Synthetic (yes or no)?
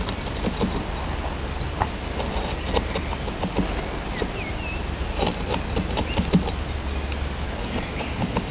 no